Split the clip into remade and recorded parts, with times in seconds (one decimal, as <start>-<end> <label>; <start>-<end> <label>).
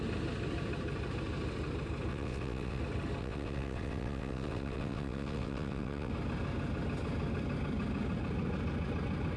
0.0-2.1 recorded; 2.1-2.8 remade; 2.8-3.2 recorded; 3.2-6.1 remade; 6.1-9.4 recorded